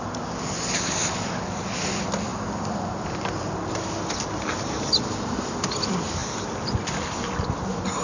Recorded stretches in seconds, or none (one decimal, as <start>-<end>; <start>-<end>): 0.0-8.0